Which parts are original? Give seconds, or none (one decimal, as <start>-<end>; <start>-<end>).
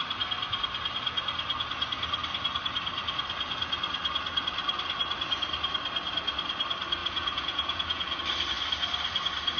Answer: 0.0-7.0; 8.2-9.6